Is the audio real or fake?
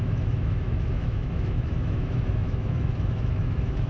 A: fake